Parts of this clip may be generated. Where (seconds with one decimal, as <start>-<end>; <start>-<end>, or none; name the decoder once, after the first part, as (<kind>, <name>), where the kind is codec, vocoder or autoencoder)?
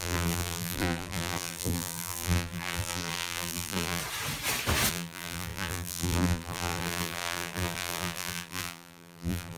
0.0-4.0 (vocoder, BigVGAN v2); 4.9-9.6